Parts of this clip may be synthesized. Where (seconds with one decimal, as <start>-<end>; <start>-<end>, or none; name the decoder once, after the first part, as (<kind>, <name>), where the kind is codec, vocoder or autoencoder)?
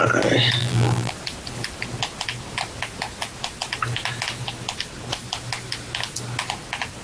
0.6-1.1 (vocoder, BigVGAN v2)